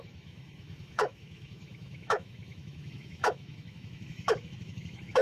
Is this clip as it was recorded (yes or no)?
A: no